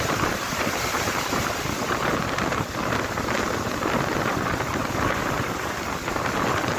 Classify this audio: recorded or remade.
recorded